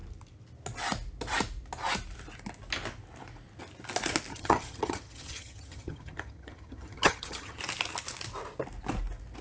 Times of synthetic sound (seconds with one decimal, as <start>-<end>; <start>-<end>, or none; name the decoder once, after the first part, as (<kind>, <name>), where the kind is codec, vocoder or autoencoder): 4.3-7.6 (vocoder, HiFi-GAN)